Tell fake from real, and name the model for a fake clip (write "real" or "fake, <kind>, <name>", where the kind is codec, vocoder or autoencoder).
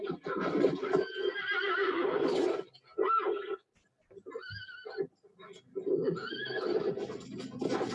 real